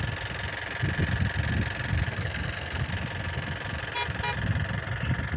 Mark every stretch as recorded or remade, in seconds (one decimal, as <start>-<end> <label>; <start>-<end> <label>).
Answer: 0.0-2.1 recorded; 2.1-2.9 remade; 2.9-5.4 recorded

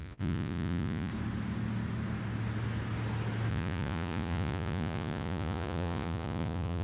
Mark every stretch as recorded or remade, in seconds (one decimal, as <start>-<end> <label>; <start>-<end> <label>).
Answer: 0.0-1.1 remade; 1.1-3.5 recorded; 3.5-6.8 remade

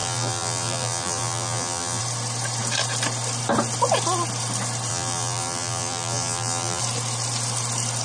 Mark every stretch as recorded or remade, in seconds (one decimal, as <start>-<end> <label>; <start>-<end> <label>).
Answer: 0.0-2.0 remade; 2.0-4.9 recorded; 4.9-6.8 remade; 6.8-8.0 recorded

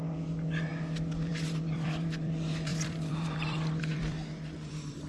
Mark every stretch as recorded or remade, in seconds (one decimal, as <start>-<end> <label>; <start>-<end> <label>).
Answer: 0.0-0.7 remade; 0.7-1.3 recorded; 1.3-5.1 remade

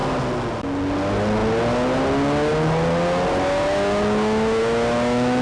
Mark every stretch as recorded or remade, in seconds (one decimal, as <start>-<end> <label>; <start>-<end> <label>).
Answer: 0.0-5.4 recorded

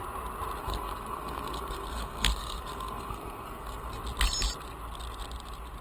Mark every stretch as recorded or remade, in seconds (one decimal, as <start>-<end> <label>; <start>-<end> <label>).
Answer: 0.0-0.6 recorded; 0.6-4.0 remade; 4.0-5.8 recorded